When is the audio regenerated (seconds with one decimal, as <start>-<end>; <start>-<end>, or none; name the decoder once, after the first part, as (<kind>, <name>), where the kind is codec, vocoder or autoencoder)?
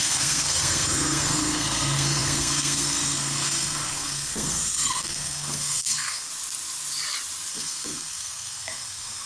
0.0-6.3 (codec, SNAC); 7.5-9.3